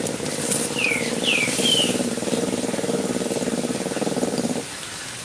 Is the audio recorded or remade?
remade